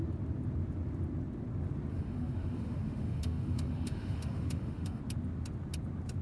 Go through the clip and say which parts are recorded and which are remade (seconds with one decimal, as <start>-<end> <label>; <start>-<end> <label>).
0.0-1.9 recorded; 1.9-5.0 remade; 5.0-6.2 recorded